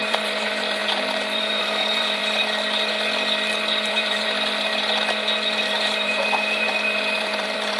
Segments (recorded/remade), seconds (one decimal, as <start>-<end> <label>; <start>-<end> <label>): 0.0-2.2 remade; 2.2-3.9 recorded; 3.9-4.7 remade; 4.7-5.6 recorded; 5.6-7.8 remade